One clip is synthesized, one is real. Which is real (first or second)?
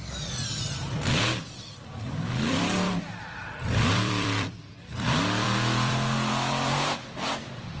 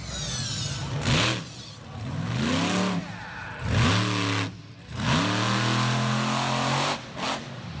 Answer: second